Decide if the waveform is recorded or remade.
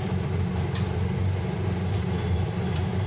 remade